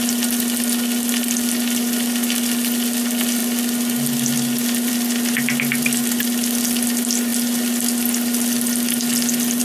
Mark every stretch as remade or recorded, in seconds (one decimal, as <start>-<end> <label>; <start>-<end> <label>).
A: 0.0-9.6 recorded